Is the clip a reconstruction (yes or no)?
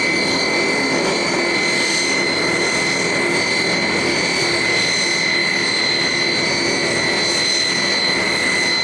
no